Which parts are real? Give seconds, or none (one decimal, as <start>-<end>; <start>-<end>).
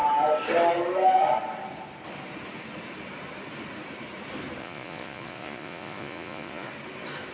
0.0-4.6; 6.7-7.3